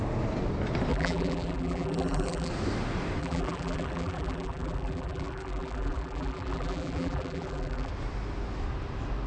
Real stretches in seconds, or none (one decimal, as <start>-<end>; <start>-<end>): 0.0-0.9; 2.5-3.2; 7.9-9.3